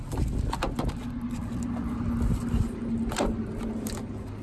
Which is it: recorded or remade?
recorded